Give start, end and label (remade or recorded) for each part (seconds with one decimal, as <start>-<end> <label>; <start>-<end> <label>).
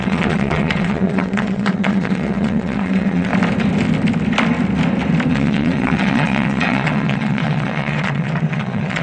0.0-3.3 remade; 3.3-5.3 recorded; 5.3-9.0 remade